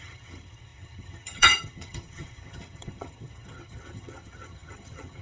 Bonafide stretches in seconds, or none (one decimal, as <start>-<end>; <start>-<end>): none